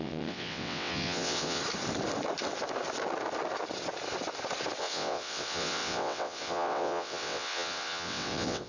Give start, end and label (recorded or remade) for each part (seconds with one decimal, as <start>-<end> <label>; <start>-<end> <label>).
0.0-1.6 remade; 1.6-4.8 recorded; 4.8-8.7 remade

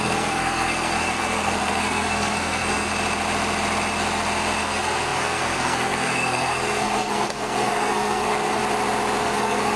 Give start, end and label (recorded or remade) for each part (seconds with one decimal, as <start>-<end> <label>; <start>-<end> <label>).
0.0-2.9 remade; 2.9-4.6 recorded; 4.6-8.6 remade; 8.6-9.2 recorded; 9.2-9.8 remade

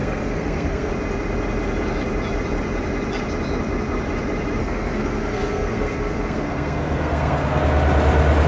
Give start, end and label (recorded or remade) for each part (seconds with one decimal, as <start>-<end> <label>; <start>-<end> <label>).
0.0-0.9 remade; 0.9-4.6 recorded; 4.6-7.6 remade; 7.6-8.5 recorded

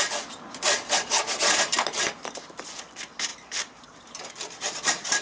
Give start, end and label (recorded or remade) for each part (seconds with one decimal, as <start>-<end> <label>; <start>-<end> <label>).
0.0-3.3 recorded; 3.3-5.2 remade

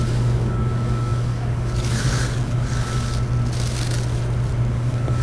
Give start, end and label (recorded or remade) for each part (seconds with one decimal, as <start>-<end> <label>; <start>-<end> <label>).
0.0-3.1 remade; 3.1-4.7 recorded; 4.7-5.2 remade